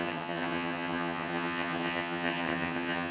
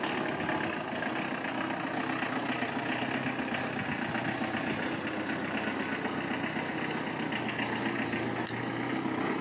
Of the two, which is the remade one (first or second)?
first